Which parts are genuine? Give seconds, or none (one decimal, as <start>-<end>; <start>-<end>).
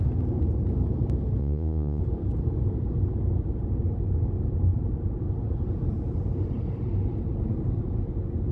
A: 0.0-1.4; 2.0-8.5